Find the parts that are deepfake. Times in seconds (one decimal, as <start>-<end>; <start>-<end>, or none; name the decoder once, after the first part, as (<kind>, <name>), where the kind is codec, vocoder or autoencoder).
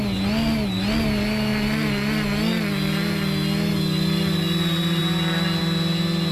none